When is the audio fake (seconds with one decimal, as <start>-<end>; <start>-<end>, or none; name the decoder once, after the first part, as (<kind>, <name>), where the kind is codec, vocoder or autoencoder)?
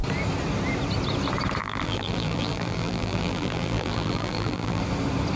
1.6-4.8 (vocoder, BigVGAN v2)